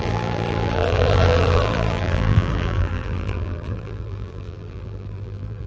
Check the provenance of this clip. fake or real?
fake